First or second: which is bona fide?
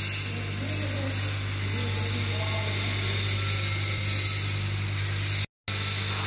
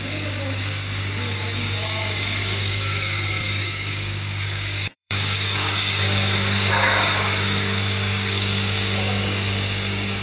first